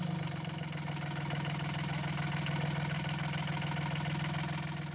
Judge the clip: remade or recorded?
recorded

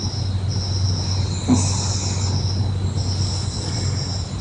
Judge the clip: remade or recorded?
recorded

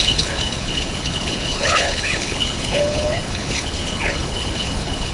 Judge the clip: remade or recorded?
remade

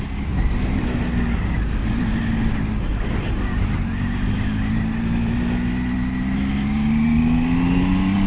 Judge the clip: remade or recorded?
recorded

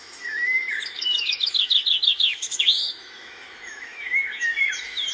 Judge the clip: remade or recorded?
remade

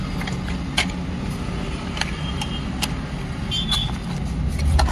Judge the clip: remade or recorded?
recorded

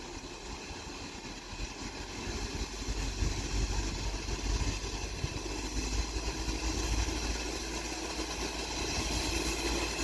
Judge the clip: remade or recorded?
recorded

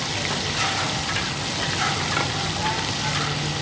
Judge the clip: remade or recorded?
recorded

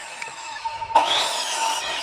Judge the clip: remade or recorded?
remade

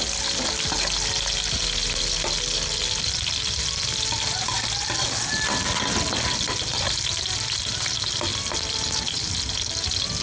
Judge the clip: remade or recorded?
recorded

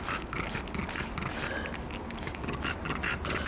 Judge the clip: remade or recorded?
recorded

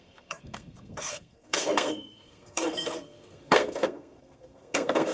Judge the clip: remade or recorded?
remade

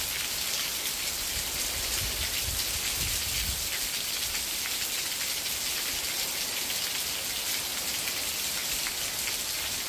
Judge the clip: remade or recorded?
recorded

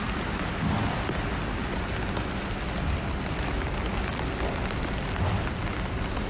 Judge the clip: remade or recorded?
recorded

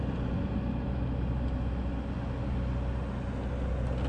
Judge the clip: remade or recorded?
recorded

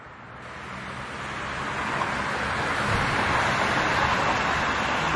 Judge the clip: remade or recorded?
recorded